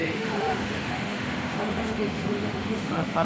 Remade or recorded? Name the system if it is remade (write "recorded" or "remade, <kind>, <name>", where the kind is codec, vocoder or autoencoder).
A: remade, autoencoder, DAC-VAE